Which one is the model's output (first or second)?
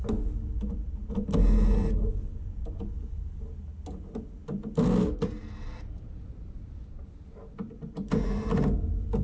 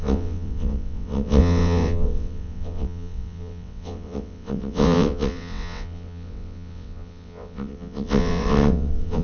second